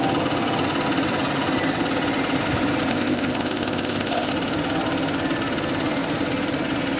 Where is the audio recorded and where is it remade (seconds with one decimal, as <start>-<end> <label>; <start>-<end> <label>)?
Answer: 0.0-2.9 recorded; 2.9-4.3 remade; 4.3-7.0 recorded